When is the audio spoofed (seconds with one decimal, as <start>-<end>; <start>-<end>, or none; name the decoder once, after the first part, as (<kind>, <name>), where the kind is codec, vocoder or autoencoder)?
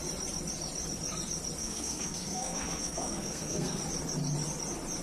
1.6-3.8 (codec, SNAC)